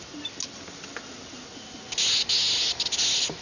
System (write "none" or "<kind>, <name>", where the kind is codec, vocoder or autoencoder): none